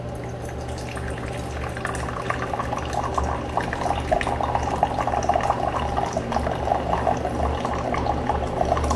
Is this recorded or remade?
recorded